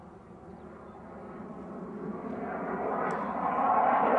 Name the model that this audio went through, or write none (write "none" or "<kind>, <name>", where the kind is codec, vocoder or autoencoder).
none